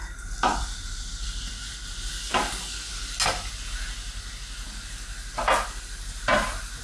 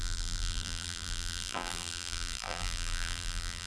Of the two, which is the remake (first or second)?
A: second